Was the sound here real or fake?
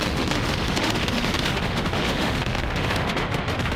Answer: fake